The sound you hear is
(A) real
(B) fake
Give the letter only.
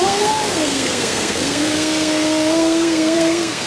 B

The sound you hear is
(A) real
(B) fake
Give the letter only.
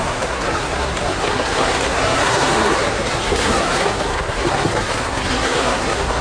B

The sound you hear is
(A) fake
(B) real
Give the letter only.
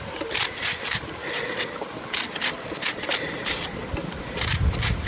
B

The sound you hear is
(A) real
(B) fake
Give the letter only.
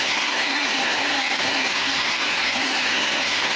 B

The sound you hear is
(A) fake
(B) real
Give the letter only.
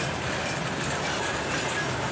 B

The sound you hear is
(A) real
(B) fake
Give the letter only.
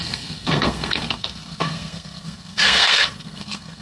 B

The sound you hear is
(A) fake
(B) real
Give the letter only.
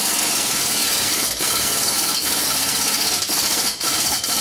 A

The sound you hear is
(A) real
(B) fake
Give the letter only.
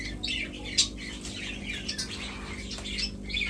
A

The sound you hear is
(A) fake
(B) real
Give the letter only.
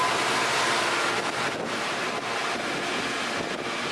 B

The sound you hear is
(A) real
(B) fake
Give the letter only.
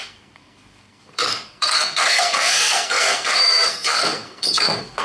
B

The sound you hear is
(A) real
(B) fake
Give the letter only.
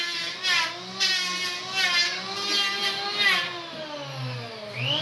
A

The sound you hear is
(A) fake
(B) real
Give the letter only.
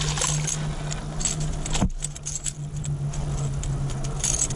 B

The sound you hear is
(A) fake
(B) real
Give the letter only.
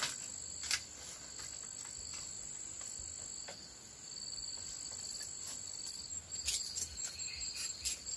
B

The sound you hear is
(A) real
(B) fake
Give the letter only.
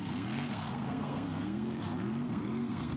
B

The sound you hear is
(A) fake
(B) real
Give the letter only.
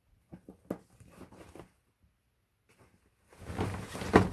B